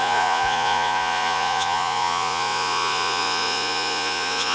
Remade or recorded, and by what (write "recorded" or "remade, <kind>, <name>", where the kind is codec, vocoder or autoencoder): remade, vocoder, Vocos